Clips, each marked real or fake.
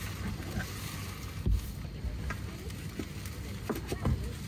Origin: real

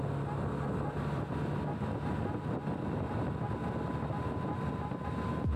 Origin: real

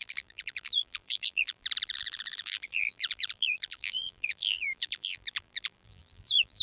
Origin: fake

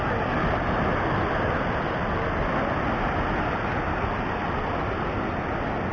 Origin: real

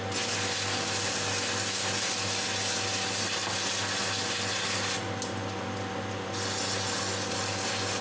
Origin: real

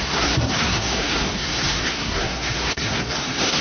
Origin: fake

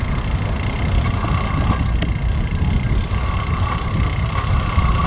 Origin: real